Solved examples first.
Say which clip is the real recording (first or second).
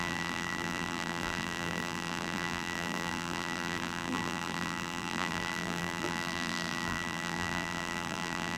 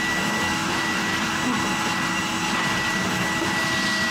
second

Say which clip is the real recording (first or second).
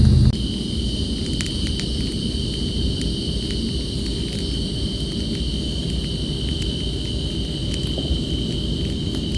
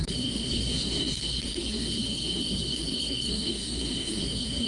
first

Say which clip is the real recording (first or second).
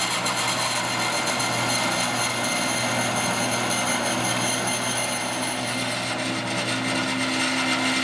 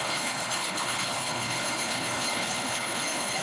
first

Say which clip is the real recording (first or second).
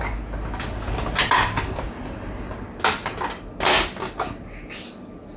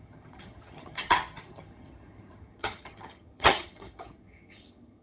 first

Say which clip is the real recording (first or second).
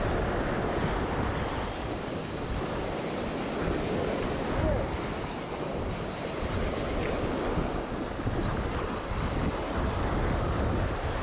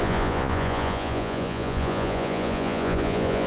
first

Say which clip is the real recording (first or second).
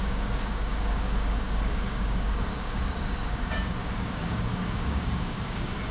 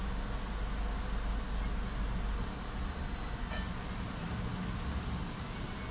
second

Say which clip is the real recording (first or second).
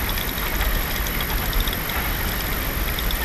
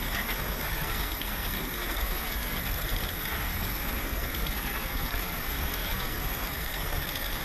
first